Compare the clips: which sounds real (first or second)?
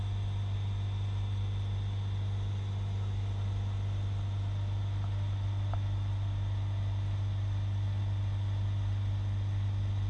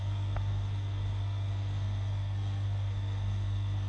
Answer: first